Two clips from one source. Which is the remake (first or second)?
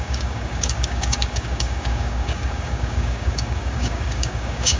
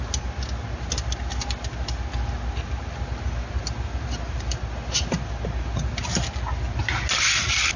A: first